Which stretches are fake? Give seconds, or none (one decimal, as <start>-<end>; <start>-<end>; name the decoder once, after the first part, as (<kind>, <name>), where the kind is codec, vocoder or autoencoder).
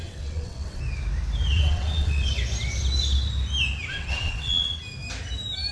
0.0-0.8 (vocoder, WaveNeXt); 1.5-2.3; 3.9-4.8